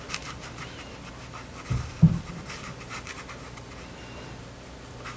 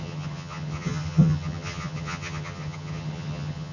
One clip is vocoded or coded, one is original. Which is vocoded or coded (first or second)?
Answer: second